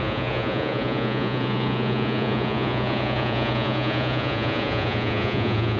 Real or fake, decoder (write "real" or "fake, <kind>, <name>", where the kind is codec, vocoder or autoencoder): fake, vocoder, Vocos